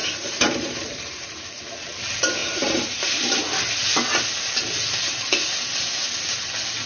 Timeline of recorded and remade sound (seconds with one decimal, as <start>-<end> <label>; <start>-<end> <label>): 0.0-1.5 remade; 1.5-2.4 recorded; 2.4-3.4 remade; 3.4-6.9 recorded